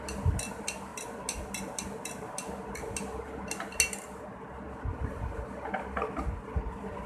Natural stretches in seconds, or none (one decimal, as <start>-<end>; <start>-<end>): 0.0-7.1